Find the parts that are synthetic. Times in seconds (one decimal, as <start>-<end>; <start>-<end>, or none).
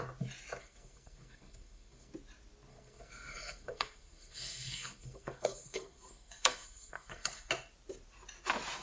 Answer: 0.6-2.1; 2.7-7.5